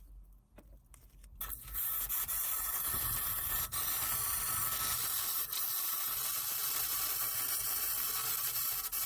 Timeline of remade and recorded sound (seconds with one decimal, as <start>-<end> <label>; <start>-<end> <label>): 0.0-9.1 recorded

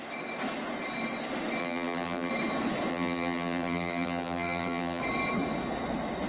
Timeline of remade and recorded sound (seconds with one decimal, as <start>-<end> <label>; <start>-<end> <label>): 0.0-1.6 recorded; 1.6-2.3 remade; 2.3-2.9 recorded; 2.9-5.0 remade; 5.0-6.3 recorded